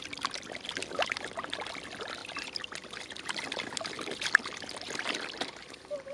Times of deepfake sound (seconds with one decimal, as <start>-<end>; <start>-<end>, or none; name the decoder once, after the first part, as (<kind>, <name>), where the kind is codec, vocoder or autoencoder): 2.2-6.1 (vocoder, BigVGAN v2)